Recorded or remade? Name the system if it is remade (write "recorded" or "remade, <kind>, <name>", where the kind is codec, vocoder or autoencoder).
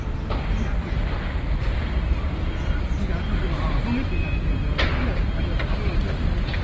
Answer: recorded